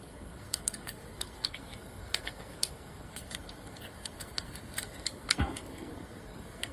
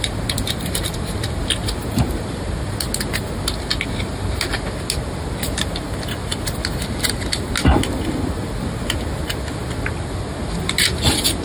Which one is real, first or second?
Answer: second